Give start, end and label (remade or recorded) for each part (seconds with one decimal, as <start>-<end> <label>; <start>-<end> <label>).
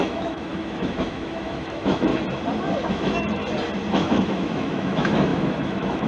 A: 0.0-2.1 remade; 2.1-2.9 recorded; 2.9-3.4 remade; 3.4-3.9 recorded; 3.9-6.1 remade